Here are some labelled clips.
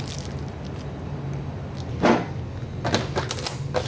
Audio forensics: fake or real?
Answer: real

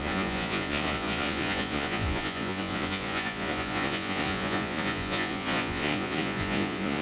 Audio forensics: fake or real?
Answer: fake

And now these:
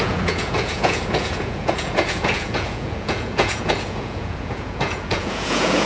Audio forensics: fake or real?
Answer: fake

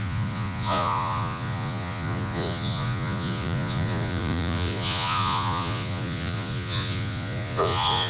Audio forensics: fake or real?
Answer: fake